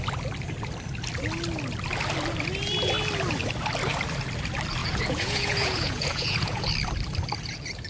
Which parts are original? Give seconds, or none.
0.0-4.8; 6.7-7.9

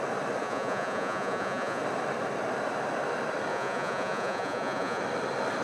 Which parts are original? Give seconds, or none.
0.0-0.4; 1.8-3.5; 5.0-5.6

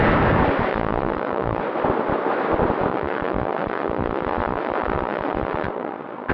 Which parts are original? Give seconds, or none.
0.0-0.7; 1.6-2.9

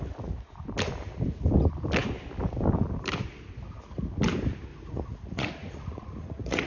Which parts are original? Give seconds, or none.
0.0-4.7